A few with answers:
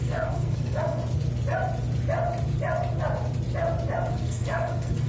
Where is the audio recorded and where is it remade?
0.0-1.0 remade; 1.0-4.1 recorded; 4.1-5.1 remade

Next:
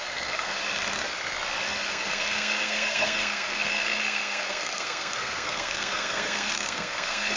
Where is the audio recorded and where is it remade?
0.0-0.6 remade; 0.6-1.9 recorded; 1.9-7.4 remade

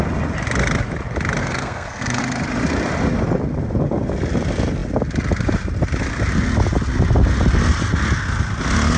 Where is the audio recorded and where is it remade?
0.0-1.4 recorded; 1.4-2.2 remade; 2.2-9.0 recorded

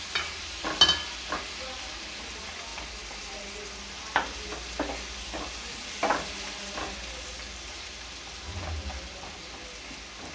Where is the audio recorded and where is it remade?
0.0-10.3 recorded

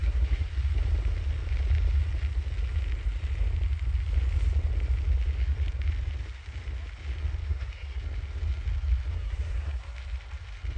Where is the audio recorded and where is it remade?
0.0-0.5 remade; 0.5-7.4 recorded; 7.4-8.0 remade; 8.0-9.1 recorded; 9.1-9.8 remade; 9.8-10.8 recorded

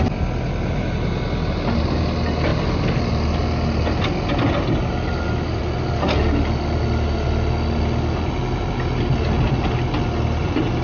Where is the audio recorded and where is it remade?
0.0-10.8 recorded

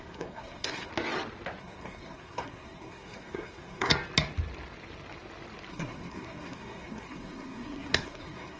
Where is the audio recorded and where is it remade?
0.0-0.9 remade; 0.9-1.6 recorded; 1.6-3.9 remade; 3.9-5.7 recorded; 5.7-8.6 remade

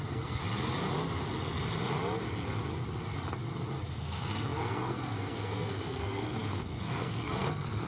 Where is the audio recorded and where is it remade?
0.0-0.4 remade; 0.4-3.9 recorded; 3.9-7.9 remade